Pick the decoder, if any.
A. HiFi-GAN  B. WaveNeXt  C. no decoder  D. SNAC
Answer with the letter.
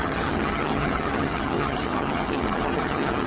A